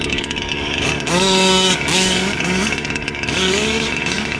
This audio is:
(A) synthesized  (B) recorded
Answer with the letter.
A